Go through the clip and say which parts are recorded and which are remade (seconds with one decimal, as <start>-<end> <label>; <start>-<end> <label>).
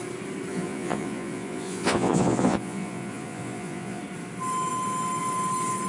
0.0-0.5 recorded; 0.5-4.0 remade; 4.0-5.9 recorded